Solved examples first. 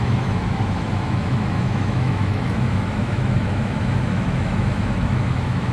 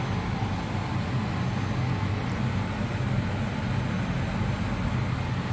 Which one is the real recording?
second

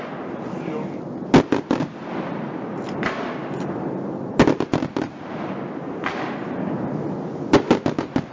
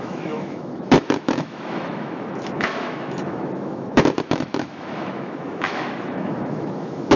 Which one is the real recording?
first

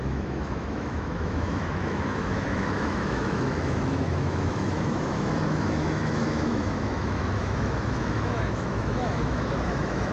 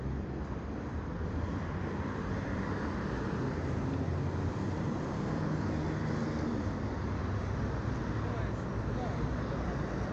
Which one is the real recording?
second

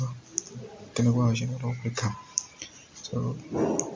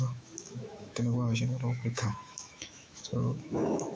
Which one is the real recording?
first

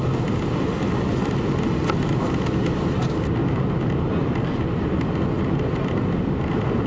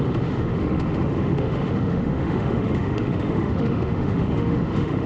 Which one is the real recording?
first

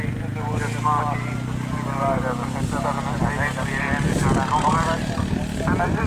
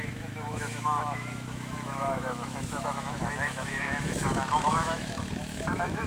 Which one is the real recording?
first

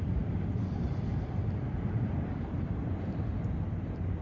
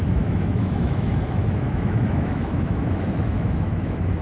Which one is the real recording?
first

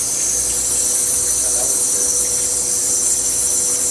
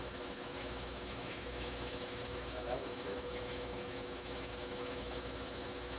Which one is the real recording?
first